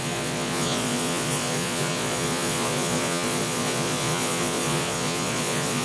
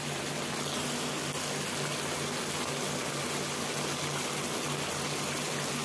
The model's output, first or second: first